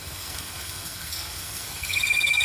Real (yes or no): no